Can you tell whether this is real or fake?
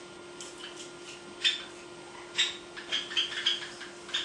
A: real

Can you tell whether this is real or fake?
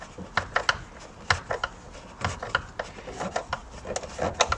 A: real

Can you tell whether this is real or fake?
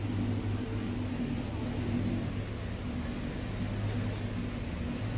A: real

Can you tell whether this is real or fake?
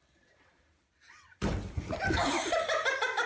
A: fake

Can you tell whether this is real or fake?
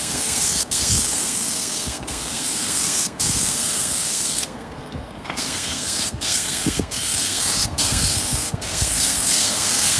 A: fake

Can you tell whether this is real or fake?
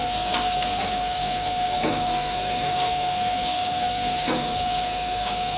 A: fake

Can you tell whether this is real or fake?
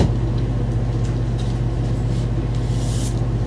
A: real